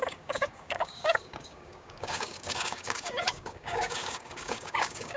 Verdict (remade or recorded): remade